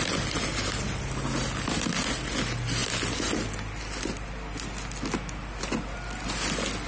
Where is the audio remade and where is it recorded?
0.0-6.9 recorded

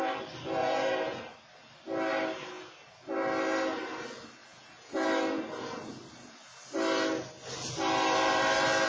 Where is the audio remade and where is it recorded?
0.0-0.6 recorded; 0.6-1.2 remade; 1.2-4.4 recorded; 4.4-5.1 remade; 5.1-8.9 recorded

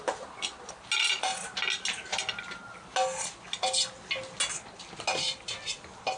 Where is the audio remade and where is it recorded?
0.0-6.2 recorded